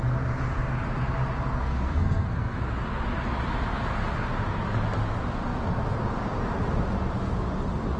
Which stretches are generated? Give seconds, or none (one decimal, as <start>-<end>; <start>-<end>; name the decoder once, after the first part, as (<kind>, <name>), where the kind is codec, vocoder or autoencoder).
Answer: 1.6-2.6 (codec, SNAC)